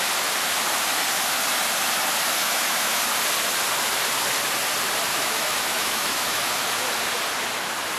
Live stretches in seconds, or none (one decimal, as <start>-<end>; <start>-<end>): 0.0-2.4; 3.0-5.1; 6.5-8.0

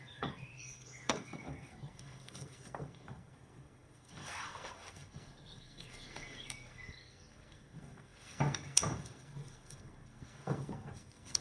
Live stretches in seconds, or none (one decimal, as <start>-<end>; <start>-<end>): none

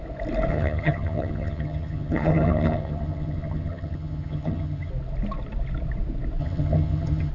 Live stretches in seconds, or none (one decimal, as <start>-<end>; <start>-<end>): 0.0-0.5; 4.9-6.4

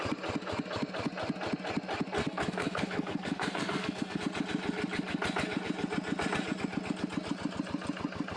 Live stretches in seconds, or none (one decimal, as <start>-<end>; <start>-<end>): 0.0-2.2; 4.2-8.4